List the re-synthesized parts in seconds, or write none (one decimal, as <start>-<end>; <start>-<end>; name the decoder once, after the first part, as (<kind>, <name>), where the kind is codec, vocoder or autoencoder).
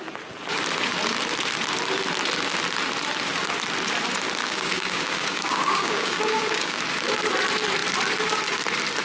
4.4-6.8 (codec, DAC)